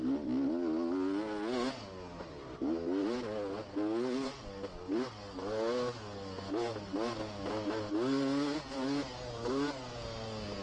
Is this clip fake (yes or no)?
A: no